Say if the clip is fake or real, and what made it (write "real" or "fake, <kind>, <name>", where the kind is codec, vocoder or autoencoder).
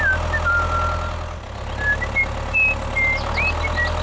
real